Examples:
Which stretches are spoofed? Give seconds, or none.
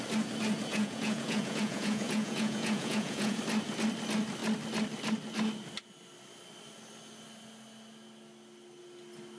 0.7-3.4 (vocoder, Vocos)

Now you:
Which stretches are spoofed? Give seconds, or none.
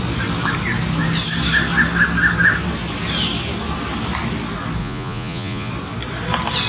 4.8-5.7 (vocoder, Vocos)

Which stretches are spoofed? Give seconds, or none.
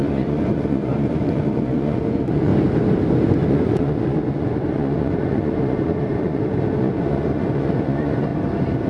0.0-2.5 (vocoder, Vocos); 3.5-8.3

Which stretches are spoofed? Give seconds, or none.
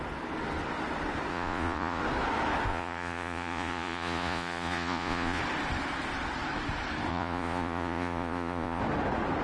1.3-2.0 (vocoder, Vocos); 2.7-5.4; 7.1-8.8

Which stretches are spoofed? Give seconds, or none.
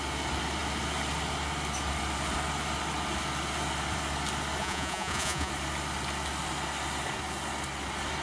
4.6-5.5 (vocoder, Vocos)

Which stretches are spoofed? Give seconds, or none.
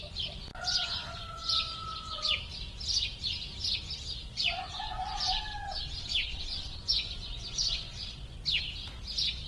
0.5-2.4 (vocoder, Vocos); 4.3-5.4; 6.8-8.4